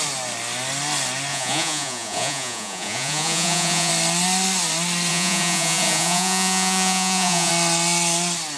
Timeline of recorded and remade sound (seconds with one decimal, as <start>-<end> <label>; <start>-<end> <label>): 0.0-1.3 recorded; 1.3-3.9 remade; 3.9-5.1 recorded; 5.1-7.5 remade; 7.5-8.6 recorded